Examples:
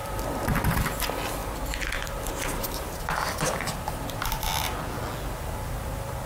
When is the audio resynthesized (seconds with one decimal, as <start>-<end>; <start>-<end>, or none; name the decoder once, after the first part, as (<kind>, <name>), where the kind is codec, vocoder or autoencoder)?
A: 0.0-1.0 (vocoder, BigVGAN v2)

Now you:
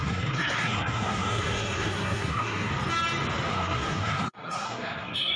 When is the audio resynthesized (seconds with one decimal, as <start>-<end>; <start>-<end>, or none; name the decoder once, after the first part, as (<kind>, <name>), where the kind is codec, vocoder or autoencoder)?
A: 0.0-2.7 (codec, SNAC); 3.5-5.4

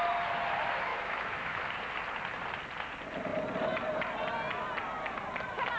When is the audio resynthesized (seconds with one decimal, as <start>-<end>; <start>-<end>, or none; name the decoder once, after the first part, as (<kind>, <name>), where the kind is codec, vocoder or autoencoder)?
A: 0.9-1.6 (autoencoder, DAC-VAE)